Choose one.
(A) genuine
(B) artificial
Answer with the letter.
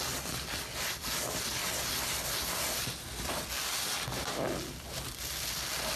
A